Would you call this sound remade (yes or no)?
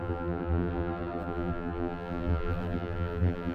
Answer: yes